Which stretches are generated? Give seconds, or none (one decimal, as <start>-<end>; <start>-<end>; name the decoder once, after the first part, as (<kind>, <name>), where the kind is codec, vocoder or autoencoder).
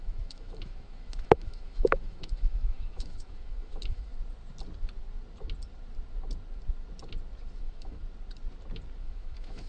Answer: 0.0-4.1 (autoencoder, DAC-VAE); 7.6-8.0; 9.0-9.7